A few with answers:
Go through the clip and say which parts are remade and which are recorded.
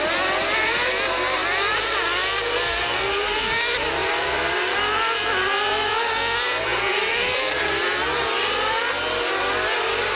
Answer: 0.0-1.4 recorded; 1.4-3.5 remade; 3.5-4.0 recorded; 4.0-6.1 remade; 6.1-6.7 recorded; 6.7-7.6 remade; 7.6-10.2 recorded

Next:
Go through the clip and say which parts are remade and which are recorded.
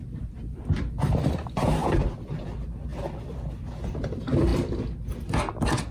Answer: 0.0-4.5 remade; 4.5-5.9 recorded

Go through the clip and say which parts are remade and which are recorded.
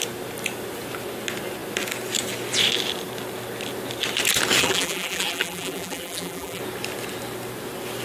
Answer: 0.0-4.6 recorded; 4.6-6.6 remade; 6.6-8.0 recorded